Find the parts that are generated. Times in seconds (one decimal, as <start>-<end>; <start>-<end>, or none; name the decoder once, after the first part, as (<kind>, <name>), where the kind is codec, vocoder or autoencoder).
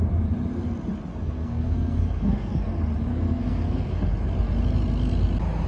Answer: 1.1-2.7 (codec, SNAC); 3.1-4.1